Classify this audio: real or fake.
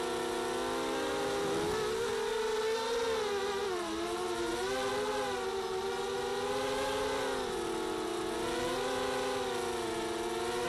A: real